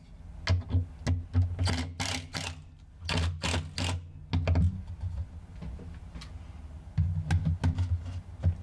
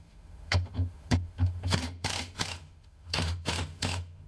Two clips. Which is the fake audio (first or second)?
second